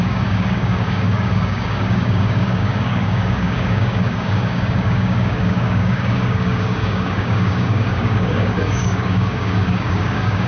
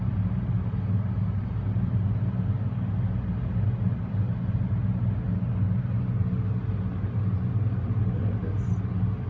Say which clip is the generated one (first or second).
first